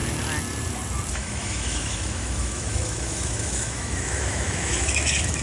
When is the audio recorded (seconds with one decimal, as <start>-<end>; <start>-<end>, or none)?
0.0-1.1